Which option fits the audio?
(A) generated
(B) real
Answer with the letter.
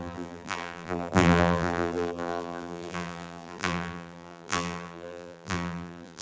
A